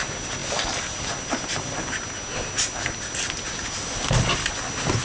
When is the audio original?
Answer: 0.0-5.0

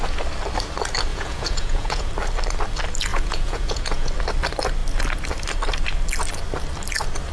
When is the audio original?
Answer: 0.0-1.1; 2.1-3.1; 4.1-7.3

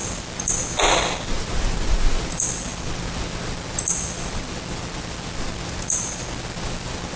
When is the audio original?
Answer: 0.0-7.2

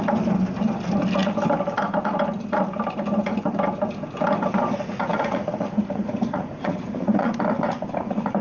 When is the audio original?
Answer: 0.0-5.1; 7.3-8.4

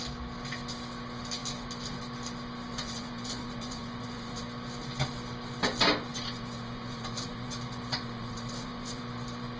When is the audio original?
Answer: 0.0-2.7; 4.4-6.1; 9.0-9.6

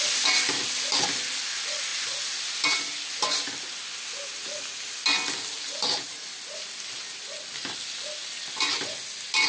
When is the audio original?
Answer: 0.0-9.5